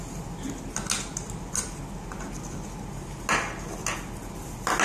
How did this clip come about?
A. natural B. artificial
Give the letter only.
A